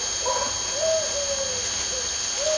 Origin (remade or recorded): recorded